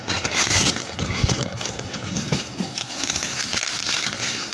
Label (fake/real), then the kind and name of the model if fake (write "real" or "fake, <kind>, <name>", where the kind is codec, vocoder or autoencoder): fake, codec, SNAC